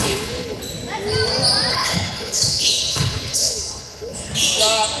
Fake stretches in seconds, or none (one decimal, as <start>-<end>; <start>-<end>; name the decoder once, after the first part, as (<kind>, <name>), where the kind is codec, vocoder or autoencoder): 0.0-0.6 (codec, HILCodec); 1.7-4.3